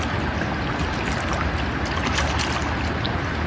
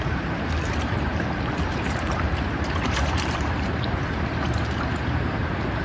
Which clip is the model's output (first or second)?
second